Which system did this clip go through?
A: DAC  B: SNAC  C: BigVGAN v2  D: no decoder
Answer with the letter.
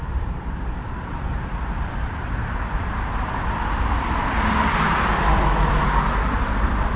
C